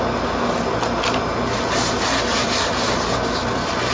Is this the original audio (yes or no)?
yes